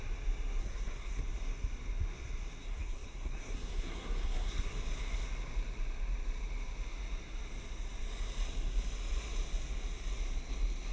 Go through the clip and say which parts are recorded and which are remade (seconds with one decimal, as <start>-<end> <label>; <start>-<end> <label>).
0.0-0.6 recorded; 0.6-1.2 remade; 1.2-2.6 recorded; 2.6-4.7 remade; 4.7-10.9 recorded